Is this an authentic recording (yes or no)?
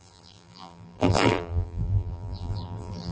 no